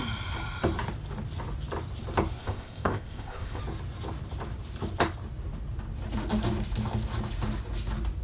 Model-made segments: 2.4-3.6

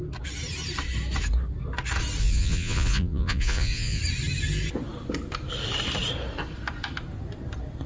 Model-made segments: 2.2-4.0

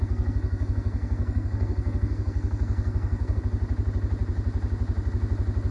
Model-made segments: 0.0-3.4